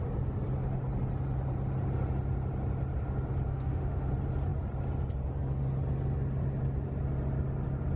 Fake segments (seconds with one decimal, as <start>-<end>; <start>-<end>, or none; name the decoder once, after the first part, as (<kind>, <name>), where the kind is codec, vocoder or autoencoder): 3.5-4.1 (autoencoder, DAC-VAE)